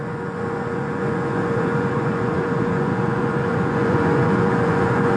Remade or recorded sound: remade